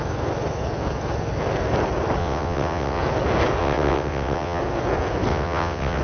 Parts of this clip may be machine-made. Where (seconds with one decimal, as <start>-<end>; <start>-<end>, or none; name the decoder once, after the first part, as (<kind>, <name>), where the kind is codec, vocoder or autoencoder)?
2.2-3.0 (vocoder, WaveNeXt); 3.6-4.6; 5.3-6.0